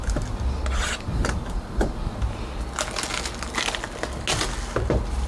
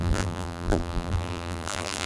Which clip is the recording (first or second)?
first